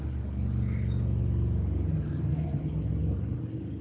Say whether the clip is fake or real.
real